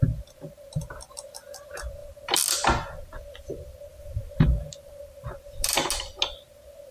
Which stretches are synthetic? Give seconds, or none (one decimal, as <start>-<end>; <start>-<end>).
2.0-3.0; 3.9-5.9